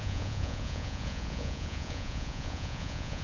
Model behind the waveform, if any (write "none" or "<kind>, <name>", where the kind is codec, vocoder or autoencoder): vocoder, Vocos